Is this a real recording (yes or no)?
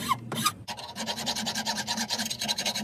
no